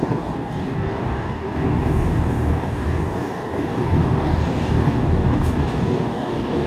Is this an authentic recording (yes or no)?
no